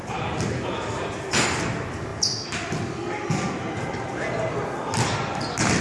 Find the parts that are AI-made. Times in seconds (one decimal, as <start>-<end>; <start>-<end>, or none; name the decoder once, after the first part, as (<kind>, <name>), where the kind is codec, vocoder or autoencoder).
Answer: none